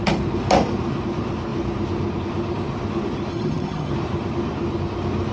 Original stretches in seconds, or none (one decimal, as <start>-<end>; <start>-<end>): 0.0-3.3; 3.9-5.3